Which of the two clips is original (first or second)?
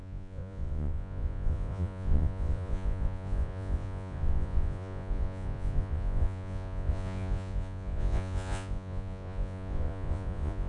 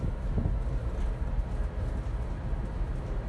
second